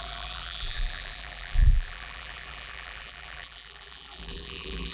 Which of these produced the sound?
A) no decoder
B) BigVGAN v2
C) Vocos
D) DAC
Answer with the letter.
B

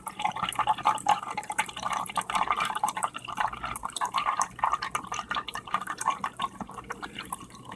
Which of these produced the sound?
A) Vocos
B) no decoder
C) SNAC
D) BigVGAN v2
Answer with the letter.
D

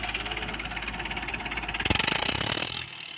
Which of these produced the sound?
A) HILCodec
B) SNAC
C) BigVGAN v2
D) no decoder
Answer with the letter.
C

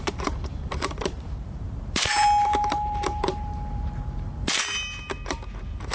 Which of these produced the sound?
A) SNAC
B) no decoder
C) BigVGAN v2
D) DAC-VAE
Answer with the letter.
C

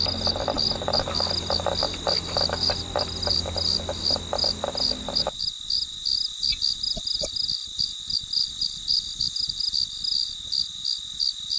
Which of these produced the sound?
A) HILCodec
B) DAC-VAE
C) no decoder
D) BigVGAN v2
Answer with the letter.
C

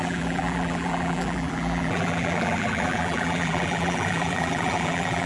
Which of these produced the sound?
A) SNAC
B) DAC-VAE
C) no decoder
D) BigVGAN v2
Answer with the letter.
D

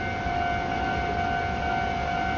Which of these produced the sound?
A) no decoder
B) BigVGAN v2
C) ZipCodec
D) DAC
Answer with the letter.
A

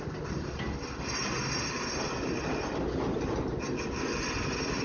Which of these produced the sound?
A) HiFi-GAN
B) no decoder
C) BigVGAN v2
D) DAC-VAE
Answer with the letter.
B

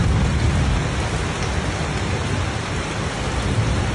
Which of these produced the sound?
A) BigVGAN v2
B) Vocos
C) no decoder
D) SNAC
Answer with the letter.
C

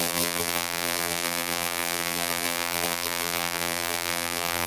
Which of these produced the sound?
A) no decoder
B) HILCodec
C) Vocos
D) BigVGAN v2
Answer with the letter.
D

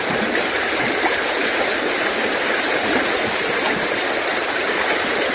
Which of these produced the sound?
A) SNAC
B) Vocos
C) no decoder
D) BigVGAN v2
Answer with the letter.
D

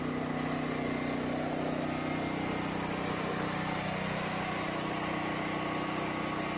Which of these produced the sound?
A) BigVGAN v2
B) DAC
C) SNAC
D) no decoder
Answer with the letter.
D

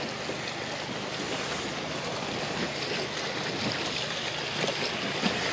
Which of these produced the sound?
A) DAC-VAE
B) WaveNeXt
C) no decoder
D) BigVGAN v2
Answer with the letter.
C